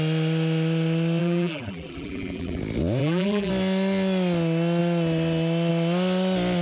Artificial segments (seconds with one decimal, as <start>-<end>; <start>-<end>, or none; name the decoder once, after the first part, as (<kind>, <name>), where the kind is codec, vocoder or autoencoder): 1.2-2.6 (vocoder, BigVGAN v2); 3.0-3.5